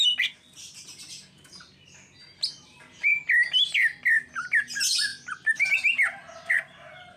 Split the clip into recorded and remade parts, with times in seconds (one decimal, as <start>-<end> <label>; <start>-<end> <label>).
0.0-7.2 recorded